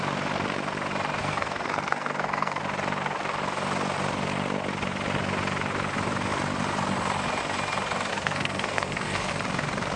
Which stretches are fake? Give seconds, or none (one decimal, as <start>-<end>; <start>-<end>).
1.2-2.6; 8.1-9.3